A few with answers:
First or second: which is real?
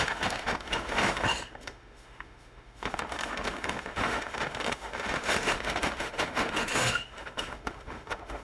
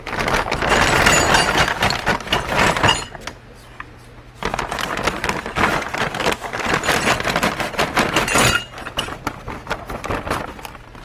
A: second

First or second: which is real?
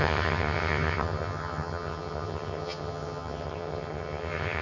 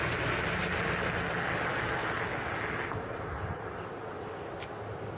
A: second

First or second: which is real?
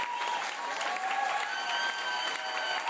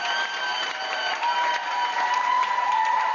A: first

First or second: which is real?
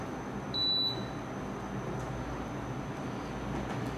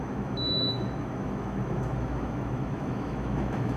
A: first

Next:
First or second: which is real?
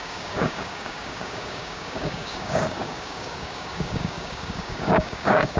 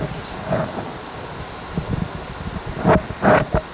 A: second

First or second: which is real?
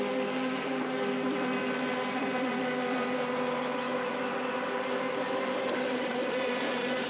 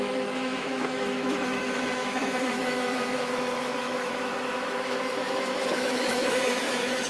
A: first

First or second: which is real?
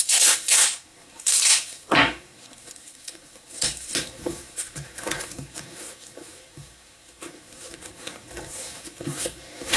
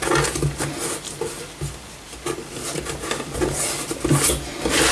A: second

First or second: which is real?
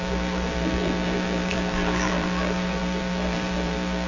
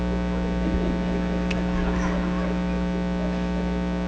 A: second